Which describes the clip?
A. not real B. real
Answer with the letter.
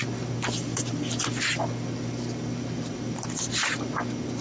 B